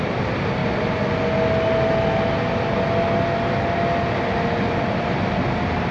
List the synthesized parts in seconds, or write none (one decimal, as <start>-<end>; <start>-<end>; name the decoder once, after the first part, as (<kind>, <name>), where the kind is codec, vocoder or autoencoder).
none